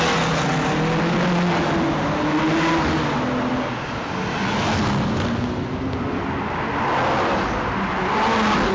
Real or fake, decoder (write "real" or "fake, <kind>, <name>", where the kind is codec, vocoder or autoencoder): real